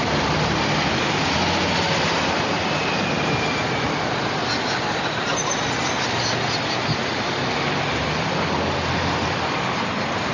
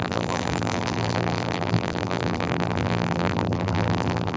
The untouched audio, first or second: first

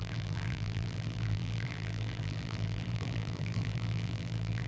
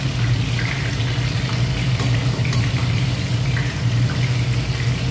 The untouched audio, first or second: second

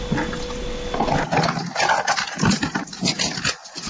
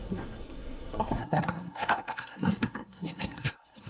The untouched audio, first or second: first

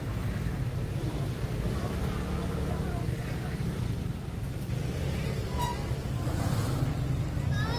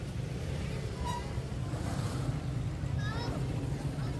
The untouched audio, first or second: first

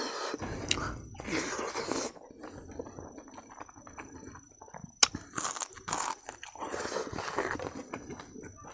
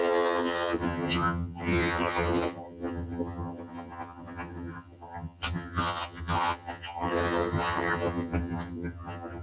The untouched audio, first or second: first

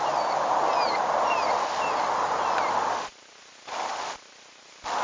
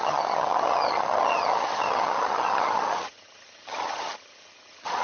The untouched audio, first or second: first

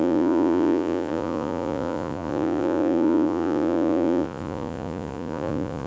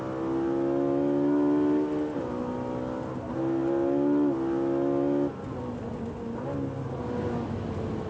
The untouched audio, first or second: second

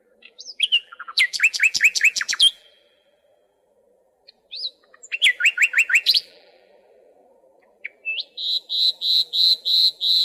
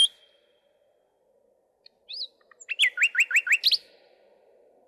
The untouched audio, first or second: second